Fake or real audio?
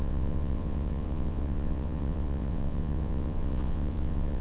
fake